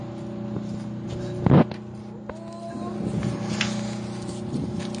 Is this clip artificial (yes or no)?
no